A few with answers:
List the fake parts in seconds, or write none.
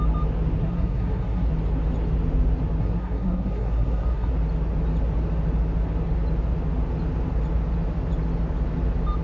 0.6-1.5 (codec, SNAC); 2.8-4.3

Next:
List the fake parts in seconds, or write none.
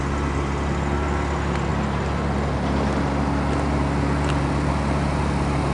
none